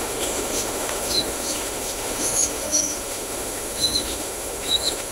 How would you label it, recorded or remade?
remade